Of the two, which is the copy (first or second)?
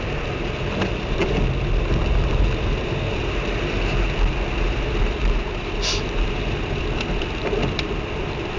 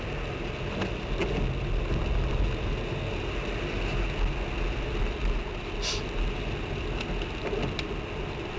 first